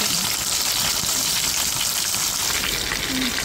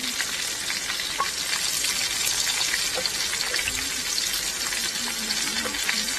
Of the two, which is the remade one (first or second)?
first